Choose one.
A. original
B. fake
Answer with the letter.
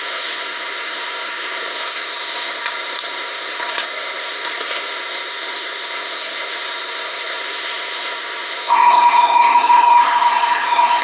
B